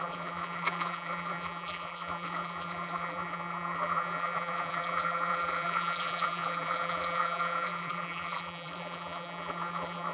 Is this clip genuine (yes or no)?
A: no